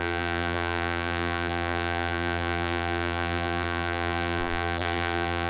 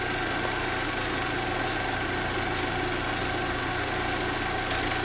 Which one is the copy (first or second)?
first